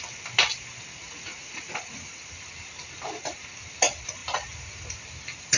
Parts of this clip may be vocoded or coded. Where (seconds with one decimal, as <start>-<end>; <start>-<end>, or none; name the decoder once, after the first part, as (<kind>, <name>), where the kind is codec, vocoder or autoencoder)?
1.0-2.4 (vocoder, Vocos)